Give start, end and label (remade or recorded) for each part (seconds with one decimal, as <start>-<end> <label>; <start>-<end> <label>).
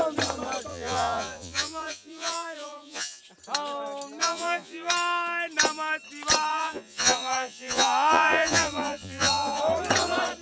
0.0-0.7 recorded; 0.7-3.2 remade; 3.2-4.2 recorded; 4.2-4.9 remade; 4.9-6.5 recorded; 6.5-9.6 remade; 9.6-10.4 recorded